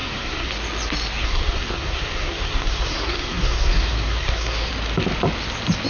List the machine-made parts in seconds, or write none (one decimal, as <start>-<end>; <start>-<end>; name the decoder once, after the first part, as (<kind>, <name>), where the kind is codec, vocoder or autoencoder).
0.0-0.5 (codec, SNAC); 1.2-4.7